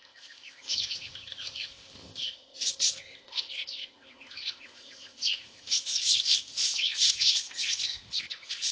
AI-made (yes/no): yes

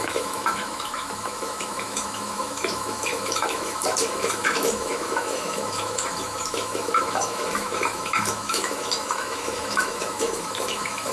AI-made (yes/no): yes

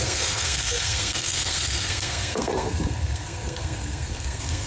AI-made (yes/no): yes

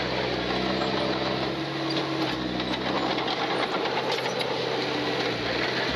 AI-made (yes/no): no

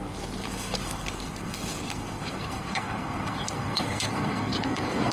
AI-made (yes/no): yes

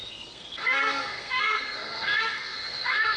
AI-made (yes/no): yes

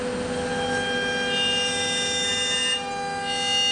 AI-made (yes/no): no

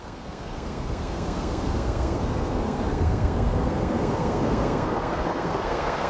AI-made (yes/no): yes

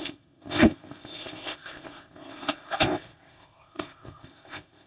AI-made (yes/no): yes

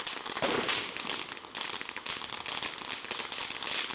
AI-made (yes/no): no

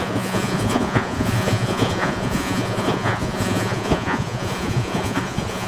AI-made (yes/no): yes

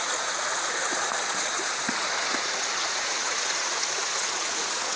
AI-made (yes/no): yes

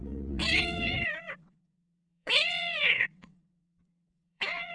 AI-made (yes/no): yes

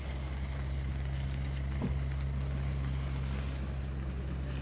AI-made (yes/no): no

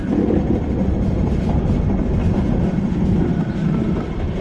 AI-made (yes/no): no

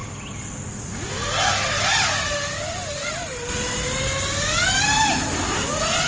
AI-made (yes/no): no